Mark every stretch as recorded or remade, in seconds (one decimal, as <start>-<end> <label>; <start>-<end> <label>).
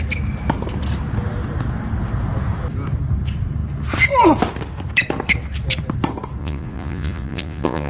0.0-6.4 recorded; 6.4-7.9 remade